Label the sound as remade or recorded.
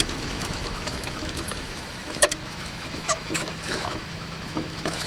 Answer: remade